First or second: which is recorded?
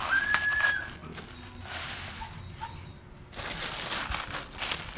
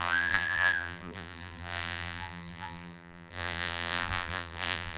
first